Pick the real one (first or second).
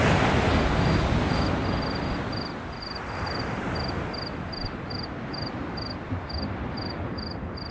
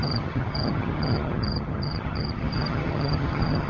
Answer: first